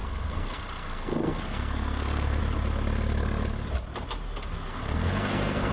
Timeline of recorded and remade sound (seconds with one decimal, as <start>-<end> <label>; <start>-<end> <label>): 0.0-2.4 remade; 2.4-4.7 recorded; 4.7-5.7 remade